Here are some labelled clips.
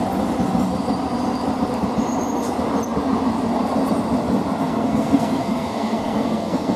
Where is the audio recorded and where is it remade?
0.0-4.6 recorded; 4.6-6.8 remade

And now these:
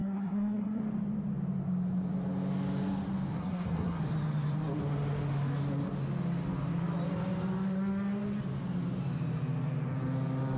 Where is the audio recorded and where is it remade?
0.0-0.8 remade; 0.8-3.3 recorded; 3.3-4.0 remade; 4.0-10.6 recorded

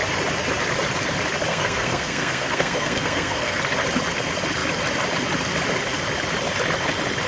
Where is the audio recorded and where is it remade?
0.0-1.5 recorded; 1.5-3.6 remade; 3.6-7.3 recorded

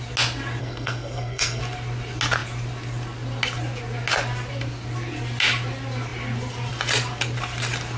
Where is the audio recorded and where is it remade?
0.0-0.6 recorded; 0.6-1.6 remade; 1.6-8.0 recorded

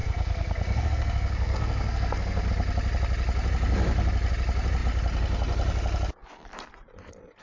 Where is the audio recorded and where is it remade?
0.0-2.5 remade; 2.5-7.4 recorded

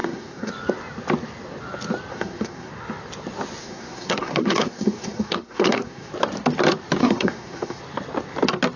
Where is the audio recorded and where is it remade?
0.0-0.5 remade; 0.5-2.1 recorded; 2.1-2.7 remade; 2.7-3.6 recorded; 3.6-6.1 remade; 6.1-7.0 recorded; 7.0-7.8 remade; 7.8-8.8 recorded

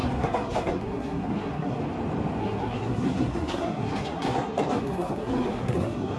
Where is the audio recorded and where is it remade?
0.0-1.8 remade; 1.8-2.4 recorded; 2.4-6.2 remade